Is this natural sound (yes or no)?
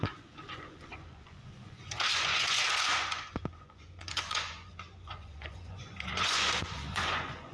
no